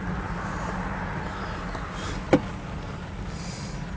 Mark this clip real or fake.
real